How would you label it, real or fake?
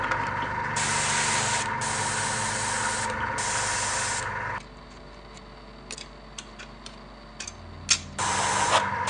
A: real